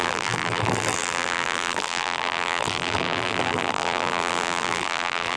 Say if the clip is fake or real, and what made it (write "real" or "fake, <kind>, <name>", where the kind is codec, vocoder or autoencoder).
fake, vocoder, BigVGAN v2